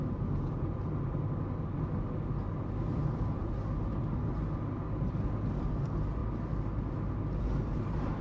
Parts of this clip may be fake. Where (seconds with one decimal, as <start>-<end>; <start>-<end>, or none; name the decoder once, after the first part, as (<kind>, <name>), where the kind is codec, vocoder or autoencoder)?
none